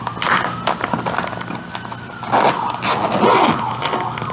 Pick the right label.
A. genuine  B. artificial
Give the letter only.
A